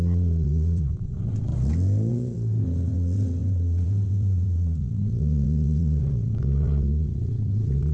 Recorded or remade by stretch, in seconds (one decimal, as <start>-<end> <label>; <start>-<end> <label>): 0.0-1.5 remade; 1.5-2.1 recorded; 2.1-7.9 remade

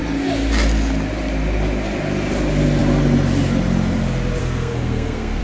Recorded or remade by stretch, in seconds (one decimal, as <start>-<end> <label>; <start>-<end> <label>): 0.0-4.4 recorded; 4.4-5.4 remade

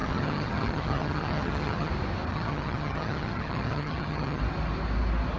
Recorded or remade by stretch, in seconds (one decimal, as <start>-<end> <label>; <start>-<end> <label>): 0.0-1.9 remade; 1.9-2.3 recorded; 2.3-4.4 remade; 4.4-5.4 recorded

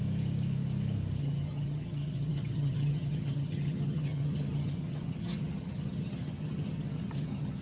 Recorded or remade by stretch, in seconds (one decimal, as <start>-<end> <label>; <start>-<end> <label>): 0.0-1.2 recorded; 1.2-7.6 remade

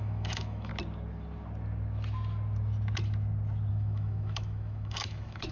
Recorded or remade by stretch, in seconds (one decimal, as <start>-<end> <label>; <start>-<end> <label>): 0.0-0.7 remade; 0.7-3.7 recorded; 3.7-5.5 remade